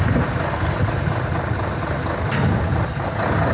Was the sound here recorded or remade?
recorded